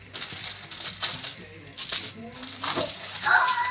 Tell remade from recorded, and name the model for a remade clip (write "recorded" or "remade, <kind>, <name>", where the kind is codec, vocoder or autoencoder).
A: recorded